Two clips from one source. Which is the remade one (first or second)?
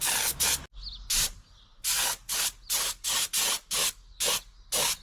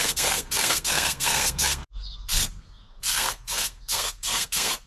second